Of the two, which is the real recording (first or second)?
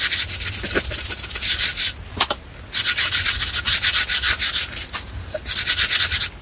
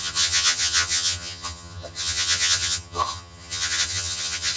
first